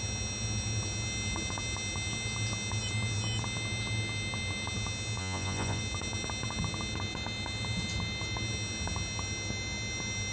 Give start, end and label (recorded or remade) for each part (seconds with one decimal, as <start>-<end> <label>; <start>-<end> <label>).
0.0-5.2 recorded; 5.2-5.8 remade; 5.8-10.3 recorded